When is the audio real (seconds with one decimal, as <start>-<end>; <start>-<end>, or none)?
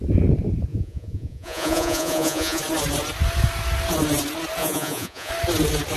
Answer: 0.0-0.7; 2.6-4.6; 5.3-6.0